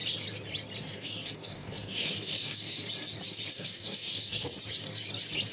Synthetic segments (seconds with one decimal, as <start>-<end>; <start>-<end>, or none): 0.8-2.8; 3.5-4.5